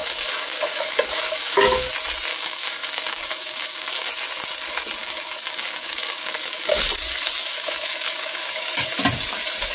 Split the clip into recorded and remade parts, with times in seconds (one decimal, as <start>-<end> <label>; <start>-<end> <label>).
0.0-1.9 remade; 1.9-2.3 recorded; 2.3-4.1 remade; 4.1-5.0 recorded; 5.0-6.8 remade; 6.8-7.4 recorded; 7.4-8.7 remade; 8.7-9.7 recorded